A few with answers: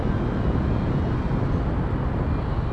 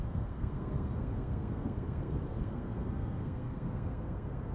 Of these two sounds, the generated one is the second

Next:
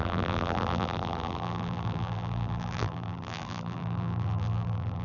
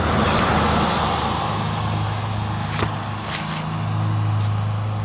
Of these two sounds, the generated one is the first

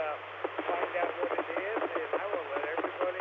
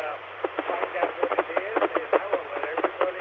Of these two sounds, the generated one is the second